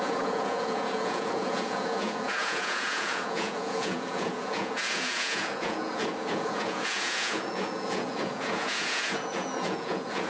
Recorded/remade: remade